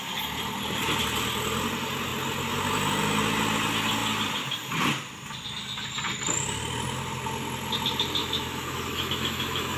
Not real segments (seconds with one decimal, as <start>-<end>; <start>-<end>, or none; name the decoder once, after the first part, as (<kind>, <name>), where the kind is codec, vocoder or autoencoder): 8.2-9.8 (autoencoder, DAC-VAE)